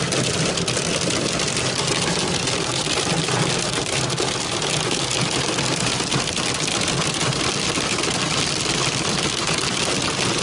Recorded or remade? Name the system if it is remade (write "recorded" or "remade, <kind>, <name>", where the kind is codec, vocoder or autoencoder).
recorded